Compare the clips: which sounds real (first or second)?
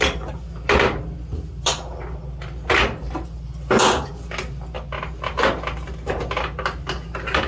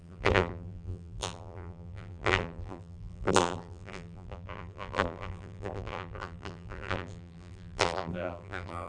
first